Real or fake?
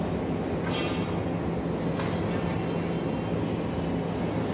real